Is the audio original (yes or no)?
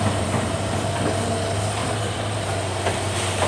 no